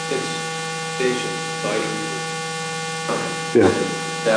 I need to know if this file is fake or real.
real